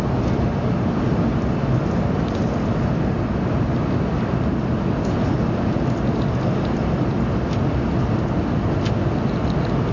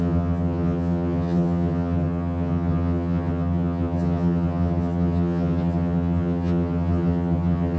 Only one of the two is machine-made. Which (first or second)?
second